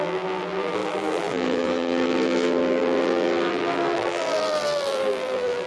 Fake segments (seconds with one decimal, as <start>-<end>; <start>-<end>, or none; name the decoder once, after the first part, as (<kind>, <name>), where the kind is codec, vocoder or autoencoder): 0.0-5.7 (vocoder, BigVGAN v2)